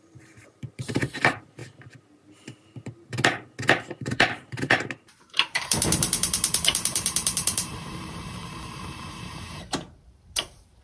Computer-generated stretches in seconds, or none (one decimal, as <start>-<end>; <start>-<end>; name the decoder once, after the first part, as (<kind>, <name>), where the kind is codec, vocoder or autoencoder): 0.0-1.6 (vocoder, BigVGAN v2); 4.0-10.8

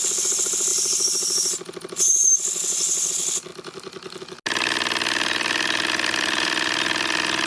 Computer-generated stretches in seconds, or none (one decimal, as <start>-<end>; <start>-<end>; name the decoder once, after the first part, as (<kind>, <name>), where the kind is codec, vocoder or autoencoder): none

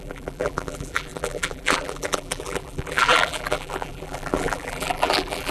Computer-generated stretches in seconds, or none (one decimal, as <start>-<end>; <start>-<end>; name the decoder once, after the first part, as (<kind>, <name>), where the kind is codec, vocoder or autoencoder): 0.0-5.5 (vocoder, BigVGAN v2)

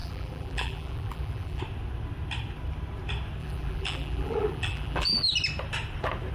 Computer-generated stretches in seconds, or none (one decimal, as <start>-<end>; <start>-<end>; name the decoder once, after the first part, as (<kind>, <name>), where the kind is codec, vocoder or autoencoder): 0.0-1.6 (vocoder, BigVGAN v2); 3.4-5.3

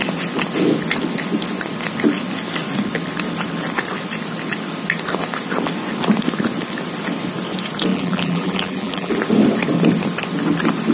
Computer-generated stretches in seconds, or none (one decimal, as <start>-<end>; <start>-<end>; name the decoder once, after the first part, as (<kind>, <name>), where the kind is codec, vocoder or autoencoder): 7.9-9.1 (vocoder, BigVGAN v2)

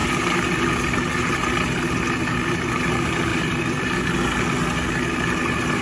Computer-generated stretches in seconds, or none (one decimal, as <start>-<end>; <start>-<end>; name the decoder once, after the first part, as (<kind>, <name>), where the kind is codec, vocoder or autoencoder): 3.3-3.9 (vocoder, BigVGAN v2)

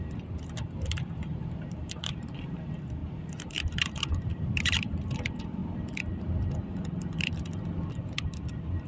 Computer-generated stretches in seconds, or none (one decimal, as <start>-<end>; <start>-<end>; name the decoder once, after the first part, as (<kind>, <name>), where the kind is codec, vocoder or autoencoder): 0.0-5.6 (vocoder, BigVGAN v2); 8.5-8.9